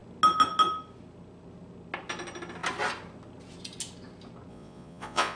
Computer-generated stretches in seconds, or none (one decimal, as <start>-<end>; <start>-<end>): 4.5-5.4